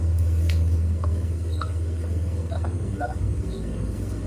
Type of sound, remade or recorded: remade